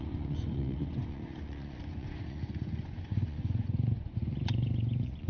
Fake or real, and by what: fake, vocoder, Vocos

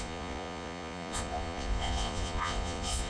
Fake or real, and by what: fake, vocoder, Vocos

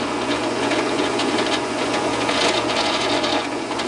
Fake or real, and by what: fake, vocoder, Vocos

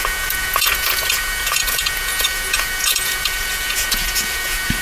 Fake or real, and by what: fake, vocoder, Vocos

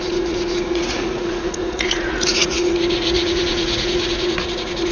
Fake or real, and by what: fake, vocoder, Vocos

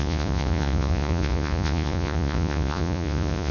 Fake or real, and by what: fake, vocoder, Vocos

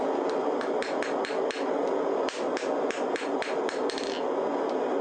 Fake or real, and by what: real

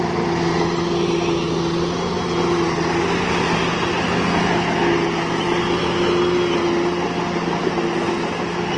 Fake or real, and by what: real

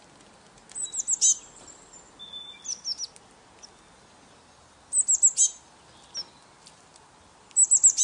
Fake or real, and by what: real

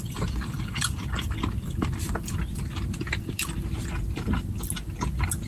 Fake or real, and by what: real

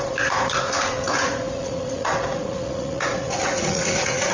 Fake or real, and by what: fake, vocoder, Vocos